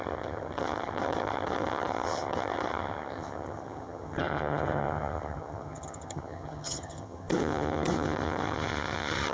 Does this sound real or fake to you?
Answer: fake